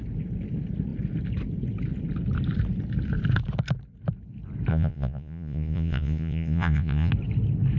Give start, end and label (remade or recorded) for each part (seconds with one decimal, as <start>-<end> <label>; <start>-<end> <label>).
0.0-4.7 recorded; 4.7-7.1 remade; 7.1-7.8 recorded